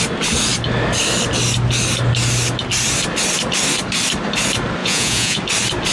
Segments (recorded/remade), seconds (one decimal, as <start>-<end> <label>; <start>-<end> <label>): 0.0-4.8 recorded; 4.8-5.4 remade; 5.4-5.9 recorded